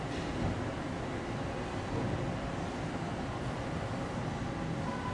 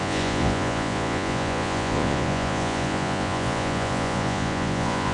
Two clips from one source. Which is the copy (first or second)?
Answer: second